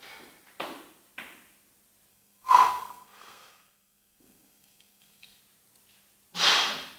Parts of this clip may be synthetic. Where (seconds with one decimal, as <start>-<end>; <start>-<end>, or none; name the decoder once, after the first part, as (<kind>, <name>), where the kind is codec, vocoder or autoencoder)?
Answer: 2.1-5.4 (codec, SNAC)